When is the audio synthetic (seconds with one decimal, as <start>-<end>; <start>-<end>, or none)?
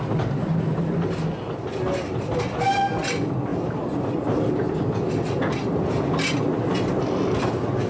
none